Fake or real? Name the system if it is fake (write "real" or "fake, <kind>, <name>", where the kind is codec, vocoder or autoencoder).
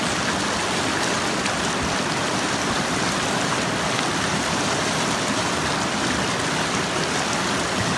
real